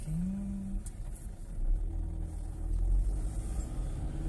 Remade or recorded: recorded